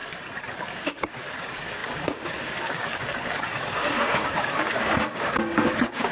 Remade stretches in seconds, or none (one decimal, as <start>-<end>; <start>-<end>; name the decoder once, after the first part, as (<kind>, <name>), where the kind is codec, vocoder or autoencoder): 0.7-6.1 (codec, DAC)